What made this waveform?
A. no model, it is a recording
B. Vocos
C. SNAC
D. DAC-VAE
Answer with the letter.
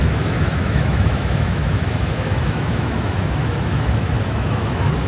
D